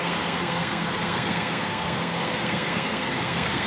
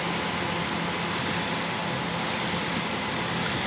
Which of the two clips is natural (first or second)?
second